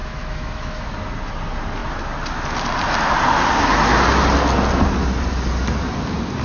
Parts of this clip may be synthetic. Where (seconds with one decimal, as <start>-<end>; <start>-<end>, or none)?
0.0-0.9

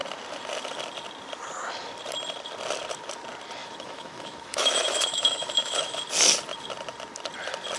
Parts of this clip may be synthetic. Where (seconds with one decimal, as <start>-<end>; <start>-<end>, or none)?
3.6-6.0

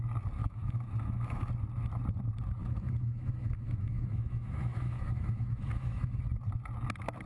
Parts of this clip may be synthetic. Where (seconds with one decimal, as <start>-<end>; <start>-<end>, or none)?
0.4-1.5; 2.6-6.2

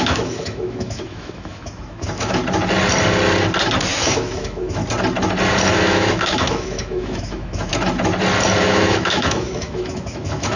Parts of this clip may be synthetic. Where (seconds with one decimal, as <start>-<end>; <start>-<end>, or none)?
0.0-2.4; 3.9-4.8; 5.7-7.7; 8.6-10.6

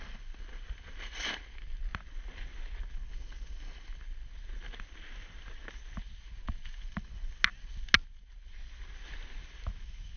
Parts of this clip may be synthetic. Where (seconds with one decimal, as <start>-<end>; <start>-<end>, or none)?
none

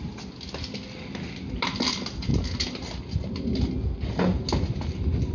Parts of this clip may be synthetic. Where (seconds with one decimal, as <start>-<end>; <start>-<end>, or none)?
none